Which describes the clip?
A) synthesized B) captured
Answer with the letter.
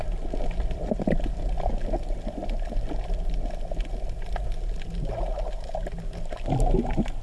B